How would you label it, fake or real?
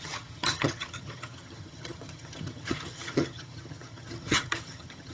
fake